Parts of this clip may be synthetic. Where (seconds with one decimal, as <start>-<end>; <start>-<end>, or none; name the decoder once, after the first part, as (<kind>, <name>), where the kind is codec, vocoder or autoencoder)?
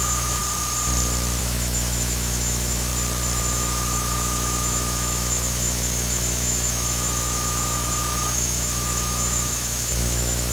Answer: 0.0-0.4 (autoencoder, DAC-VAE); 1.4-2.9; 3.4-10.5